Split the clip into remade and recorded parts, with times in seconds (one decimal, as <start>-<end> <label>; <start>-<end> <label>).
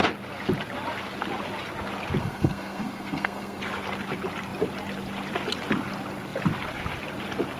0.0-2.2 recorded; 2.2-3.6 remade; 3.6-7.6 recorded